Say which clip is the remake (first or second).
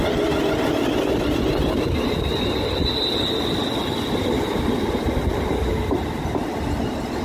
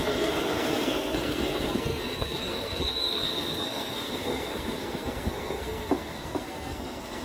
second